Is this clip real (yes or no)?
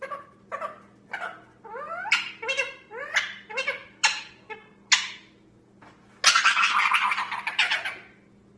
yes